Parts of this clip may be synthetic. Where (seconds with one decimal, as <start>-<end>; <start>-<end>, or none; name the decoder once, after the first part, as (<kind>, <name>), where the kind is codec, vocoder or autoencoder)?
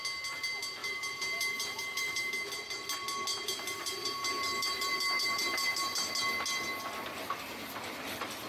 0.8-2.3 (vocoder, BigVGAN v2); 3.3-6.1